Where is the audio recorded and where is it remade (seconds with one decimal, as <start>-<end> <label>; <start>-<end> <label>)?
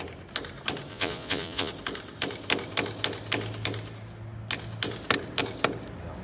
0.0-0.9 recorded; 0.9-1.7 remade; 1.7-6.2 recorded